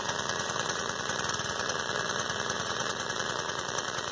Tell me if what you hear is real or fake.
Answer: fake